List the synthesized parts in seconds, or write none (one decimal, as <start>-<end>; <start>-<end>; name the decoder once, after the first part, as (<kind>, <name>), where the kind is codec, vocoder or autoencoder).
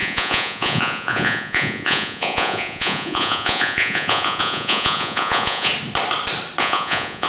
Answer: 0.0-5.7 (vocoder, Vocos); 6.6-7.3